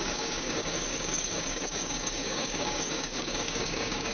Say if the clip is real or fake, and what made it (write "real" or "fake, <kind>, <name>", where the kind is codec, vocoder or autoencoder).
fake, codec, DAC